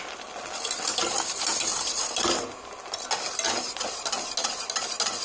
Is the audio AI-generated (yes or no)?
no